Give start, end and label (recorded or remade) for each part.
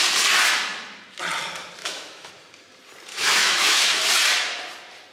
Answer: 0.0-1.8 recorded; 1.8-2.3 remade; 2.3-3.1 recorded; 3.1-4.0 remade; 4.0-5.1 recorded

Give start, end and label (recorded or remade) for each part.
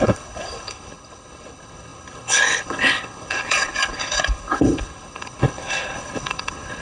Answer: 0.0-6.8 remade